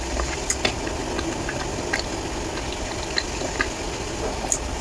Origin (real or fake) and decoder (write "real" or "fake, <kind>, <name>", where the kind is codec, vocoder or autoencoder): real